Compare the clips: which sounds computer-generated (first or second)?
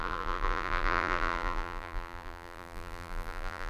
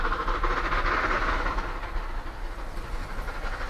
first